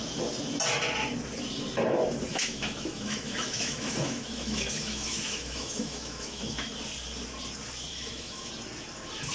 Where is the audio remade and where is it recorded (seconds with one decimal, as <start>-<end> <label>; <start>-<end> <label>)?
0.0-2.3 recorded; 2.3-6.7 remade; 6.7-7.9 recorded; 7.9-8.5 remade; 8.5-9.3 recorded